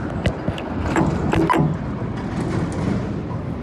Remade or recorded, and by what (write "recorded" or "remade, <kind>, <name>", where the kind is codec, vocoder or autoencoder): recorded